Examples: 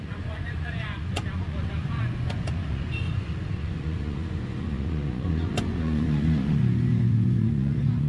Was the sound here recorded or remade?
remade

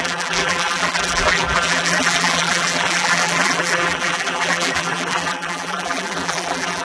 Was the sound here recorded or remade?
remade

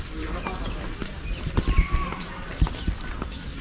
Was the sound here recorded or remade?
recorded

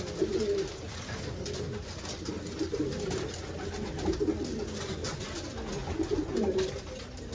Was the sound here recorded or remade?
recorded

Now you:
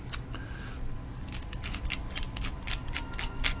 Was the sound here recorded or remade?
recorded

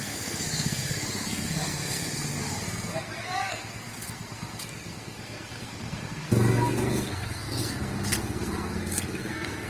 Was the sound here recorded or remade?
remade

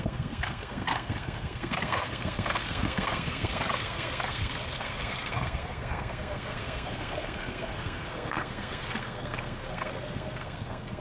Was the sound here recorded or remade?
remade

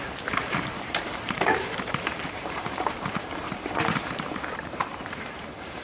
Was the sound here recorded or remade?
remade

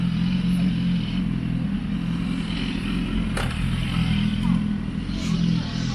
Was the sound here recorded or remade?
recorded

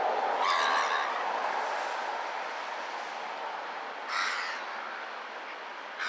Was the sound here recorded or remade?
recorded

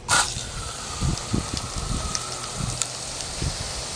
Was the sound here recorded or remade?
remade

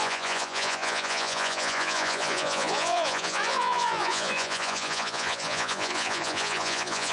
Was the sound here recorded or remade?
remade